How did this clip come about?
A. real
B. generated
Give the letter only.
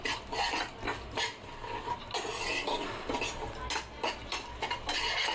A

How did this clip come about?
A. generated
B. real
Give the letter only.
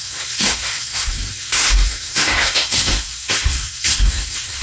A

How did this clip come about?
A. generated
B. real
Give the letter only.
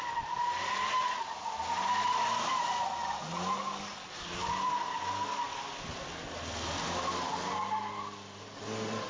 B